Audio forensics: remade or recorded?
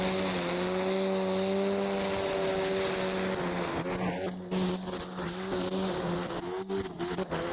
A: recorded